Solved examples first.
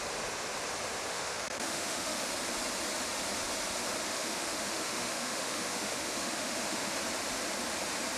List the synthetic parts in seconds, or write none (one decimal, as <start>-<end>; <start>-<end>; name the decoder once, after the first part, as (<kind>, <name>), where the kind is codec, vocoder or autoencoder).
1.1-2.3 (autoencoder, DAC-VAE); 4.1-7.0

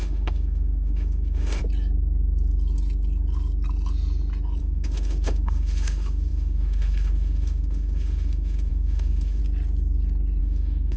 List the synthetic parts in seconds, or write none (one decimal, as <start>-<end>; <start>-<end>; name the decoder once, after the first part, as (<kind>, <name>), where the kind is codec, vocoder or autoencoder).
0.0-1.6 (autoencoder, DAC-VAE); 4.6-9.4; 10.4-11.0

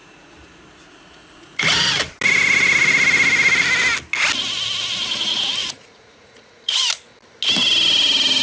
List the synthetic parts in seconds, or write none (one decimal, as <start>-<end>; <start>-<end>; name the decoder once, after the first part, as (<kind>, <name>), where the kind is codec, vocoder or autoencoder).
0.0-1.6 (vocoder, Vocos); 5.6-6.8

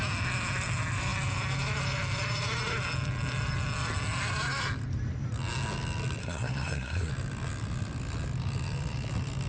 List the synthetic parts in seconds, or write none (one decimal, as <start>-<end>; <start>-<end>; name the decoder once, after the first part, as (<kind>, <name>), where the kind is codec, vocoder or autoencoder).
6.2-7.1 (codec, SNAC)

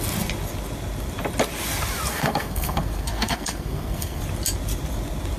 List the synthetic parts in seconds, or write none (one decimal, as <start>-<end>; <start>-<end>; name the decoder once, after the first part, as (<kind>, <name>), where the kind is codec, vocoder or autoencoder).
2.1-4.2 (codec, SNAC)